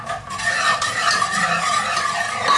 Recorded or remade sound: recorded